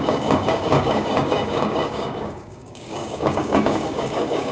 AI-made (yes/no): yes